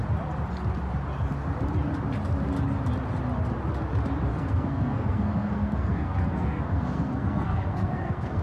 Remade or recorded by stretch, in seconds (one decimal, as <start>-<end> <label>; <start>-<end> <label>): 0.0-4.3 recorded; 4.3-8.4 remade